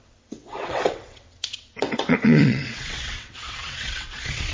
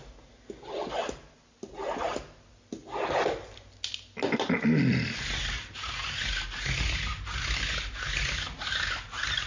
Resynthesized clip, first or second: first